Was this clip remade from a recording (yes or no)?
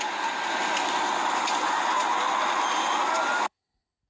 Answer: no